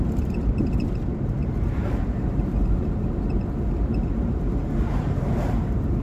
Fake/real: fake